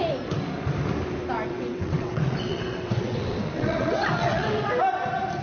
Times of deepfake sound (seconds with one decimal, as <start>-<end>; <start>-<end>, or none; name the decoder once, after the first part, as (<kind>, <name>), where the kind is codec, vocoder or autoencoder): 1.5-4.7 (vocoder, WaveNeXt)

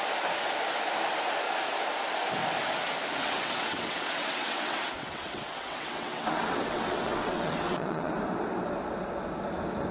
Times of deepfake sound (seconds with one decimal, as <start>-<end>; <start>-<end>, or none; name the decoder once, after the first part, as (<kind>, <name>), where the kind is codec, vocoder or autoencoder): 3.2-8.1 (vocoder, WaveNeXt)